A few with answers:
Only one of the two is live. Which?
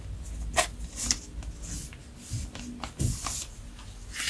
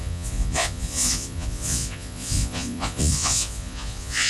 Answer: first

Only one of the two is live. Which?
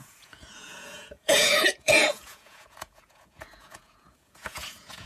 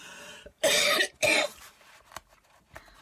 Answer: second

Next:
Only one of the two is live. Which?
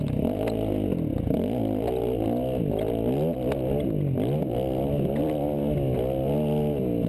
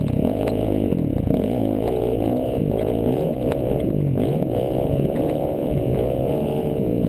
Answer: first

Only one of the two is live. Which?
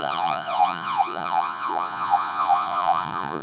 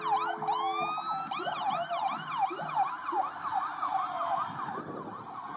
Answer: second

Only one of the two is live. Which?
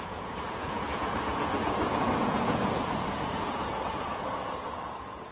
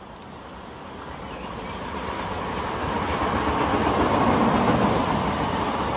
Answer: second